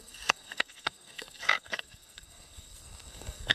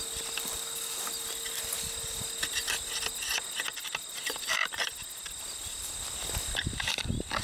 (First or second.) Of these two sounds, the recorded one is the second